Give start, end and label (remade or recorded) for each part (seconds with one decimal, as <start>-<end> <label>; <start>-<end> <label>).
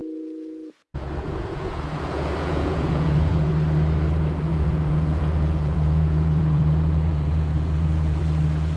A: 0.0-3.5 remade; 3.5-4.5 recorded; 4.5-8.2 remade; 8.2-8.8 recorded